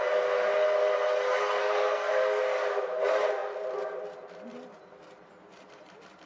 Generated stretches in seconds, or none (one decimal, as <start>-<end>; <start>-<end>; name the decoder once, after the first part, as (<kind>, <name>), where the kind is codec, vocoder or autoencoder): 1.6-2.4 (codec, SNAC)